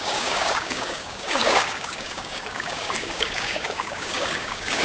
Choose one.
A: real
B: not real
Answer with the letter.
B